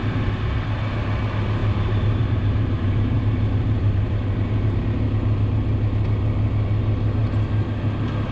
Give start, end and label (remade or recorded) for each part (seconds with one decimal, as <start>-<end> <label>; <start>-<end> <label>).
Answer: 0.0-1.6 recorded; 1.6-4.8 remade; 4.8-8.3 recorded

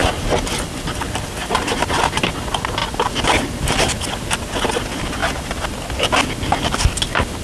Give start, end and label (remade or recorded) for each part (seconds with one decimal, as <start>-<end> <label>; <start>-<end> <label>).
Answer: 0.0-1.4 recorded; 1.4-2.0 remade; 2.0-7.4 recorded

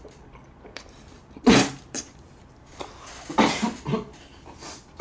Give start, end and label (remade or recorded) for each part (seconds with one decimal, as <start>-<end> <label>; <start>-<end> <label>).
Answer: 0.0-0.7 recorded; 0.7-2.4 remade; 2.4-5.0 recorded

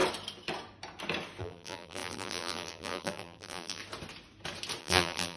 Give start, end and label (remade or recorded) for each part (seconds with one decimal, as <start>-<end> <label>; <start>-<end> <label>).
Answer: 0.0-1.4 recorded; 1.4-3.8 remade; 3.8-4.8 recorded; 4.8-5.4 remade